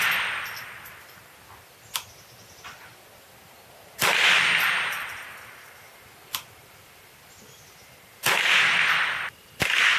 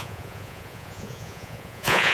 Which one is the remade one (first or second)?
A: second